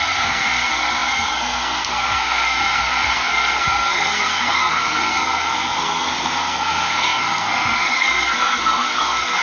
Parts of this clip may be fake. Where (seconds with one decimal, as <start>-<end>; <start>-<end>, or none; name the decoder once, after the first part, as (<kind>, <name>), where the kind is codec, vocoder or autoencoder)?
0.0-9.4 (codec, SNAC)